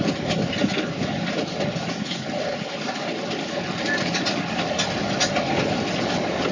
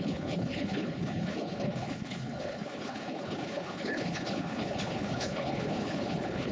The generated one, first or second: second